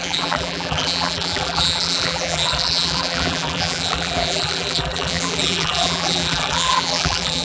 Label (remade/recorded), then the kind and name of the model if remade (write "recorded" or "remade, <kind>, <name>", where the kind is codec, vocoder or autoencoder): remade, vocoder, BigVGAN v2